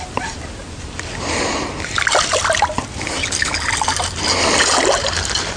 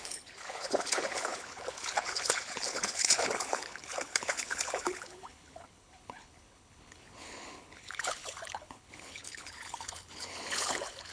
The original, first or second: first